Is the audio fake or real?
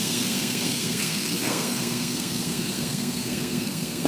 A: fake